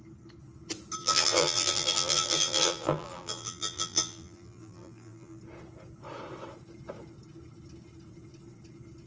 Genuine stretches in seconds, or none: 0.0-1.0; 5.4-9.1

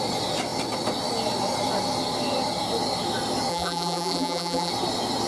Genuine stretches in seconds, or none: 0.0-3.5; 4.7-5.3

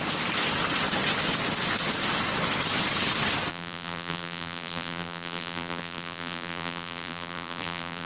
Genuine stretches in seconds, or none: 0.0-3.5

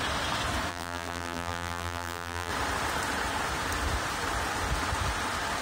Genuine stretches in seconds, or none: 0.0-0.7; 2.5-5.6

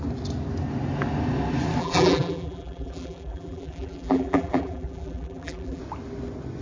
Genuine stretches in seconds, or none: 0.0-1.8; 5.8-6.6

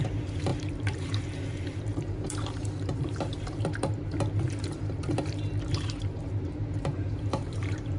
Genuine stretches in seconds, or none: none

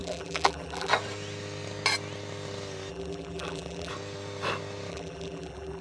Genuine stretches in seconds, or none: 0.9-2.9; 3.9-4.9